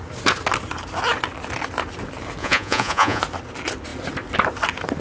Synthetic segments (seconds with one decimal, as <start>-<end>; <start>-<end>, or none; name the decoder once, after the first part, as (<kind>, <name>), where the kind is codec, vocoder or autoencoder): 2.4-3.2 (vocoder, Vocos)